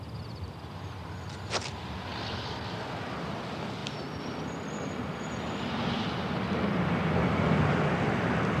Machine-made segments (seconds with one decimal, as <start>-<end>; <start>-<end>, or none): none